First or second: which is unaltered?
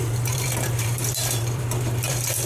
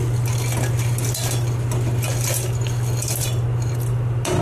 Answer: second